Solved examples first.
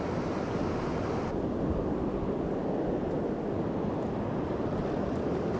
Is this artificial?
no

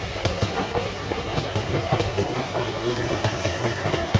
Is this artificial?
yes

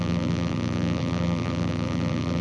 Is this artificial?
yes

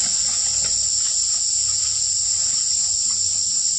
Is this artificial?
no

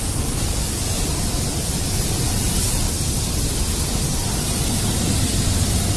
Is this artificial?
no